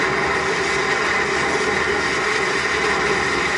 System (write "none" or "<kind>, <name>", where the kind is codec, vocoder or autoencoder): none